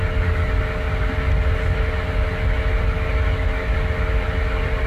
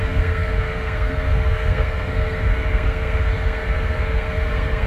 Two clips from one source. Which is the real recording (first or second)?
first